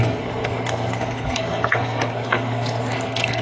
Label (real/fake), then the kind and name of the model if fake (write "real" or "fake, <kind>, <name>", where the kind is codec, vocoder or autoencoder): fake, codec, SNAC